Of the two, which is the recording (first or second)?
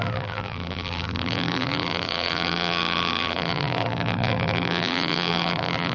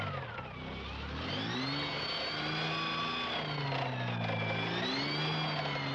second